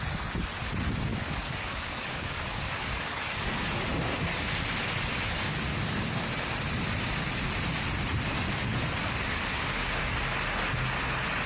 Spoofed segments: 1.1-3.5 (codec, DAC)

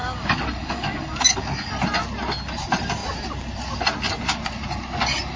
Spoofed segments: 0.0-1.7 (codec, DAC)

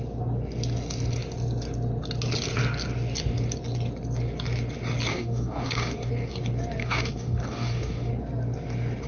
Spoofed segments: 5.1-6.1 (codec, DAC); 6.8-8.1

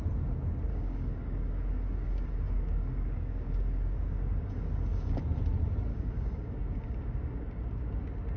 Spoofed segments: 0.7-5.2 (codec, DAC); 5.9-8.0

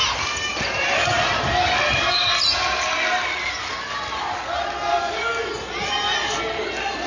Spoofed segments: 4.9-5.5 (codec, DAC)